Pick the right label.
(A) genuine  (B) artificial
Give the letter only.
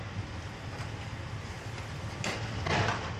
A